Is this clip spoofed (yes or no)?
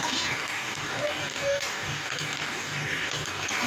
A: yes